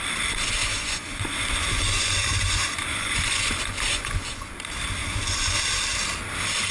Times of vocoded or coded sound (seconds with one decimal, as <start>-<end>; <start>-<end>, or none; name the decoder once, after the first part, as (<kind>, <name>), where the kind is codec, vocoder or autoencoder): 0.6-4.5 (vocoder, Vocos); 5.0-5.6